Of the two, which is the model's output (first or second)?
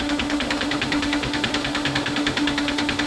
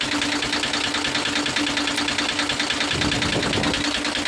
first